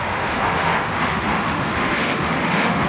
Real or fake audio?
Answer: fake